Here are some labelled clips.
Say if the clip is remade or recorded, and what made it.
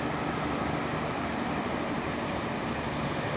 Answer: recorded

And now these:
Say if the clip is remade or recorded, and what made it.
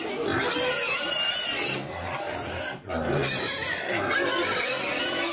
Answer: recorded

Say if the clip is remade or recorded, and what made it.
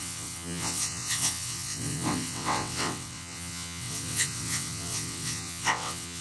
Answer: remade, vocoder, WaveNeXt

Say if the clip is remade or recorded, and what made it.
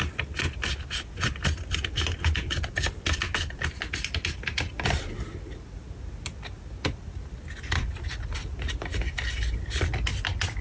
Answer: recorded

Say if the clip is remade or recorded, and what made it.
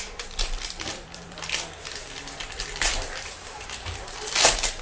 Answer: remade, vocoder, BigVGAN v2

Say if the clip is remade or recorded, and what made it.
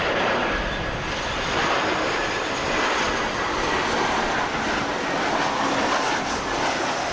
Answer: recorded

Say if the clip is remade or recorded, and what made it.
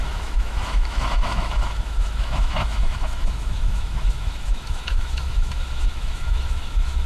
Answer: remade, autoencoder, DAC-VAE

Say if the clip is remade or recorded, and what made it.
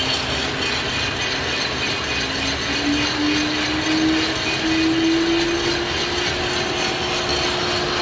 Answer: recorded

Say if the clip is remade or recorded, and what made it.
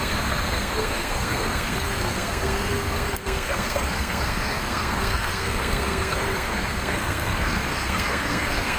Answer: remade, codec, SNAC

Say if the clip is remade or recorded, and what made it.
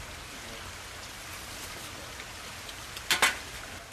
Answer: recorded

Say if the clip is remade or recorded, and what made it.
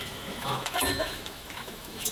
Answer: remade, autoencoder, DAC-VAE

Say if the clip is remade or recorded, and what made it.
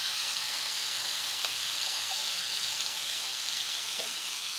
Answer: remade, codec, SNAC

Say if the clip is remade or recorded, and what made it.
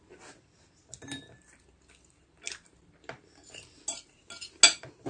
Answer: recorded